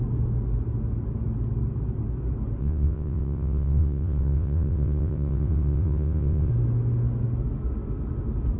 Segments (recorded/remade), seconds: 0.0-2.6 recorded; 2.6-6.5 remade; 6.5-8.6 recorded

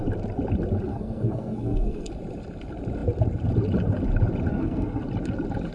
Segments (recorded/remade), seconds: 0.0-0.9 recorded; 0.9-2.1 remade; 2.1-4.5 recorded; 4.5-5.0 remade; 5.0-5.7 recorded

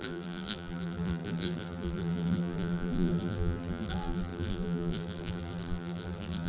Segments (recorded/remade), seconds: 0.0-6.5 remade

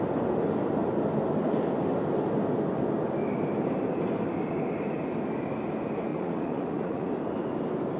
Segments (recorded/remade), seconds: 0.0-6.1 recorded; 6.1-7.1 remade; 7.1-8.0 recorded

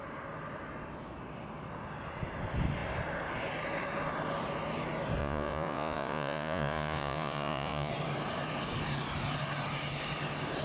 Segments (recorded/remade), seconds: 0.0-5.2 recorded; 5.2-7.9 remade; 7.9-10.6 recorded